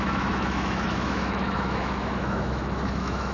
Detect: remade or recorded remade